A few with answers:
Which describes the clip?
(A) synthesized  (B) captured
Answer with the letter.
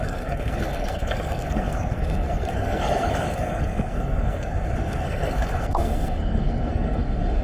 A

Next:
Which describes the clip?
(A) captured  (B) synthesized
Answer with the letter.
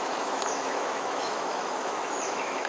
B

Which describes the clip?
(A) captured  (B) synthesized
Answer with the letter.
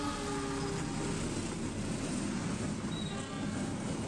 A